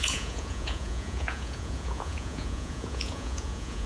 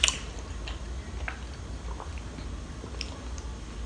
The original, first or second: second